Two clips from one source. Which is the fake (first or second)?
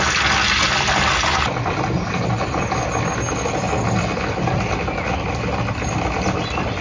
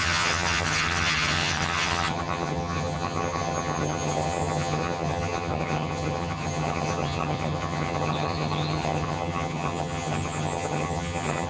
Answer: second